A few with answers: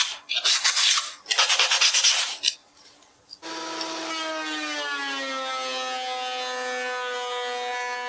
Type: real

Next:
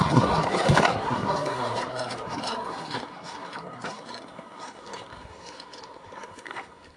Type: fake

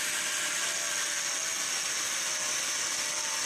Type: real